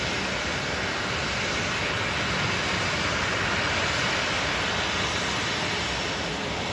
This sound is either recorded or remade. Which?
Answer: recorded